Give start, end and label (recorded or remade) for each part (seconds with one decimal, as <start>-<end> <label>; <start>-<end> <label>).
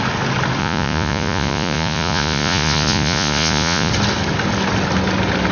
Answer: 0.0-0.6 recorded; 0.6-3.9 remade; 3.9-5.5 recorded